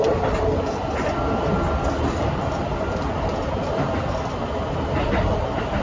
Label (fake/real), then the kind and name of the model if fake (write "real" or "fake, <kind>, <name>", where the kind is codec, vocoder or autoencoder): real